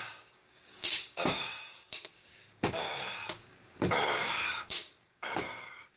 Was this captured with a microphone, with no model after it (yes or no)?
no